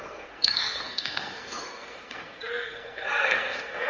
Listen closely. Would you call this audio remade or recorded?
remade